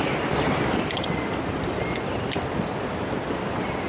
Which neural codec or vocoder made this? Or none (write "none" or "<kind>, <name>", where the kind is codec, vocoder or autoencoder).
none